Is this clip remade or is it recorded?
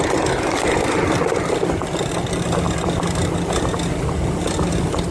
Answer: recorded